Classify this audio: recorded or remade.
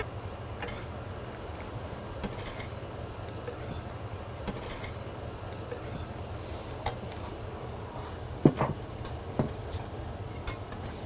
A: recorded